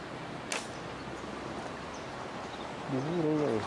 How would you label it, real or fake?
real